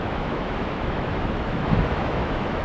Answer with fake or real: fake